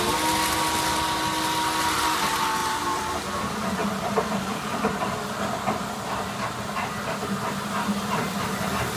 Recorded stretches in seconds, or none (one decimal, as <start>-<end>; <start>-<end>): 0.0-2.6; 3.4-9.0